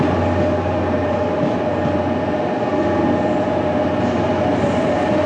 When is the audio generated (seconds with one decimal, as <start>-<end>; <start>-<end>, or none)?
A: none